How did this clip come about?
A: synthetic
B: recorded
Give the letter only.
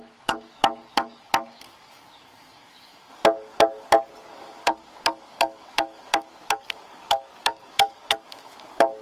A